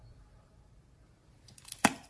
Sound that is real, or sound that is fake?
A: real